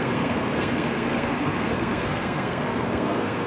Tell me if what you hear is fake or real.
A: fake